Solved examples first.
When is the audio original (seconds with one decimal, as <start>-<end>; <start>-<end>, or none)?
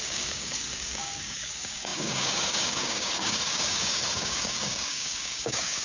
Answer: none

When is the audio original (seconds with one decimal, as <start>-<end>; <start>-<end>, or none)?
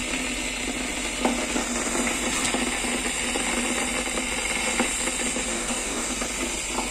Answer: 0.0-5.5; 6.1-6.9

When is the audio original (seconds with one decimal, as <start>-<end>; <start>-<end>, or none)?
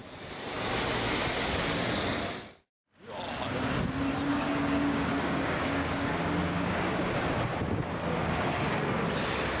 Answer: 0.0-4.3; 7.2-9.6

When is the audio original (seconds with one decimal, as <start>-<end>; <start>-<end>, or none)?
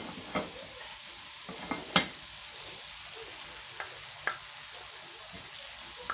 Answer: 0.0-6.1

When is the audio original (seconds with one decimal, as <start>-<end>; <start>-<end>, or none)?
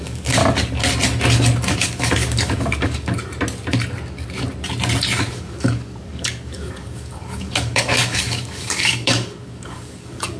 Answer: 0.4-1.7; 3.2-5.3